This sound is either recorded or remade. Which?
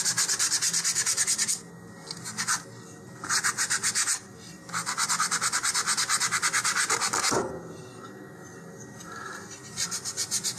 recorded